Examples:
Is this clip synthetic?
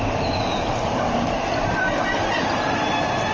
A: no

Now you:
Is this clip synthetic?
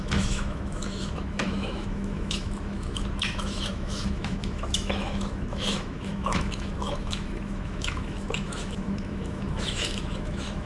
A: yes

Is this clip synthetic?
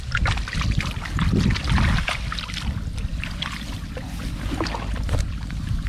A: no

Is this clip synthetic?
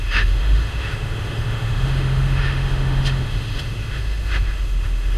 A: yes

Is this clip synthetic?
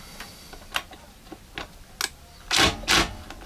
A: no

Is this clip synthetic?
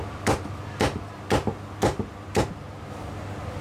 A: no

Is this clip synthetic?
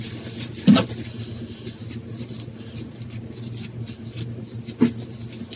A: no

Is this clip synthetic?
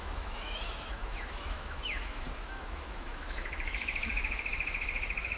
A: yes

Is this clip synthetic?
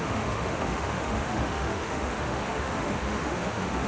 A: yes